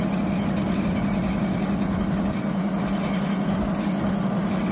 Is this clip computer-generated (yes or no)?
no